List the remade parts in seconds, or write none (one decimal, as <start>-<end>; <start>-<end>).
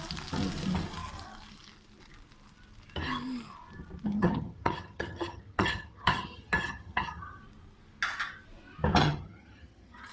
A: 4.2-7.4; 9.0-10.1